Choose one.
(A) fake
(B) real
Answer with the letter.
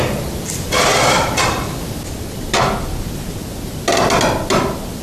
B